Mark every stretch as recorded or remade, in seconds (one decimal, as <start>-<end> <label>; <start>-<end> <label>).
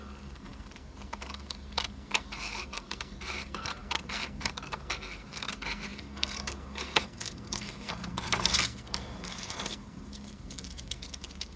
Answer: 0.0-11.6 remade